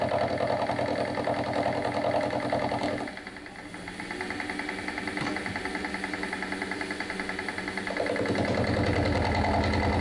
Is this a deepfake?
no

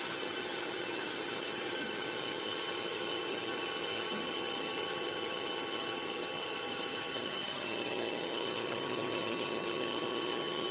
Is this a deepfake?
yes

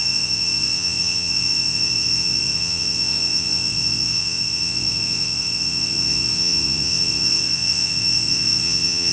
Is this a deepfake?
yes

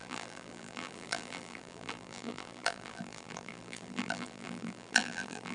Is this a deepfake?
yes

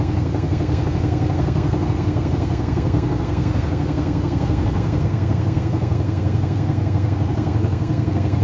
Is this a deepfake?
yes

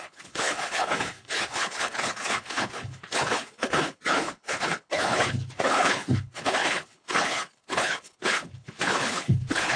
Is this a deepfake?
yes